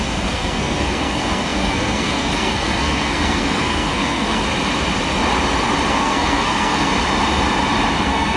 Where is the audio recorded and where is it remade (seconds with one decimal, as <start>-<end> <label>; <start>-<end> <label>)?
0.0-4.4 remade; 4.4-5.9 recorded; 5.9-6.9 remade; 6.9-8.0 recorded; 8.0-8.4 remade